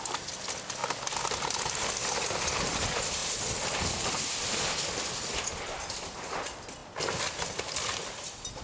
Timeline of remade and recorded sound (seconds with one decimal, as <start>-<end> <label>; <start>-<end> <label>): 0.0-0.8 remade; 0.8-2.5 recorded; 2.5-8.6 remade